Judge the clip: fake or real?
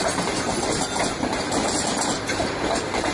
fake